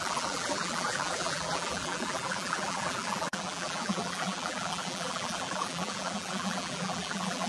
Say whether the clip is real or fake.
fake